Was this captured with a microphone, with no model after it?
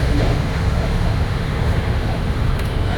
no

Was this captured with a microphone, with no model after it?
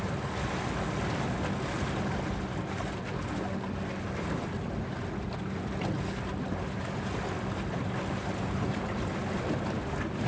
yes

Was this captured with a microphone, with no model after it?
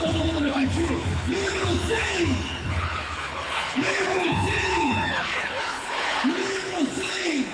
no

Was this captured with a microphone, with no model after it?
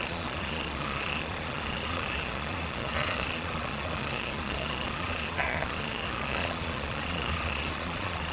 no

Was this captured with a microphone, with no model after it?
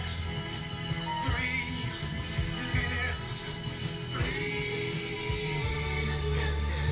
yes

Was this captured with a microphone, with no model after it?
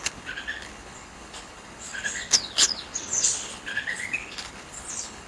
no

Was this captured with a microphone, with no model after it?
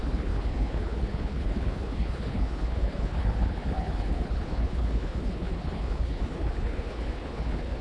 no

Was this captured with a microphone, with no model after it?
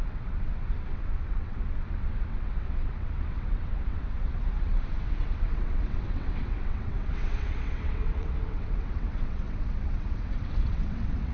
no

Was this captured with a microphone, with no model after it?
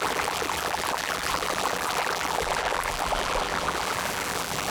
no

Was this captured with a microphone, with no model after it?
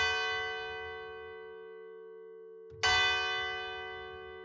yes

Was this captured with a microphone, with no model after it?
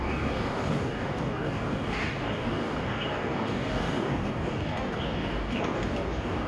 no